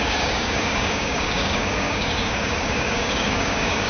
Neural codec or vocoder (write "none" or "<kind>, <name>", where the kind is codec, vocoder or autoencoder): codec, DAC